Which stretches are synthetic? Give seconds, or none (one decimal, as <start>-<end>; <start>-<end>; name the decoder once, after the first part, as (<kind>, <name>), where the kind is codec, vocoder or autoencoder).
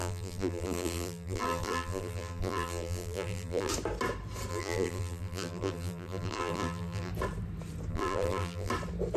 0.0-3.7 (vocoder, BigVGAN v2); 4.5-7.1; 7.9-8.7